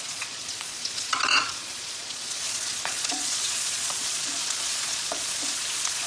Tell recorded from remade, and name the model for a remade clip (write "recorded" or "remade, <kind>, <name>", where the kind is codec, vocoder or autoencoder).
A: remade, vocoder, Vocos